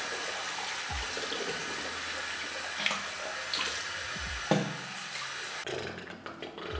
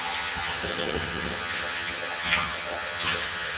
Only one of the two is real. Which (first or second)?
first